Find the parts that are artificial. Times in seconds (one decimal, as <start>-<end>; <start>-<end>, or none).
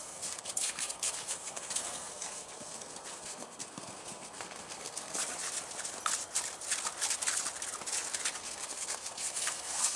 0.0-5.2; 8.4-10.0